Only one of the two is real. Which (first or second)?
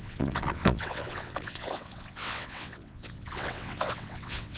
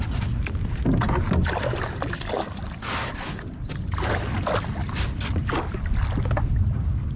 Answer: second